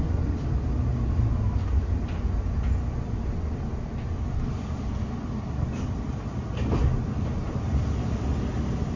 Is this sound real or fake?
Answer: real